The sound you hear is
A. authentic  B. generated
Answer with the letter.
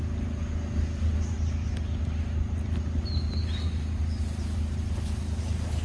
A